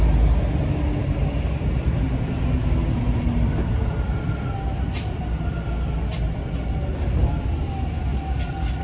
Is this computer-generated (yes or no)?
no